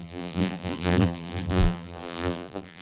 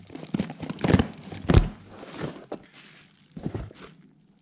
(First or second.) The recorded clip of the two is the second